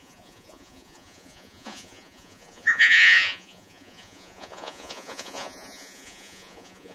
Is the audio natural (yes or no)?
no